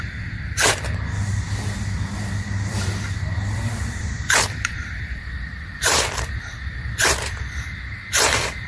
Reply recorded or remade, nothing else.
remade